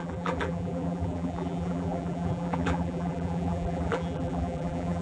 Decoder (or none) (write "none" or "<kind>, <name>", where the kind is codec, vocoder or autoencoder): vocoder, BigVGAN v2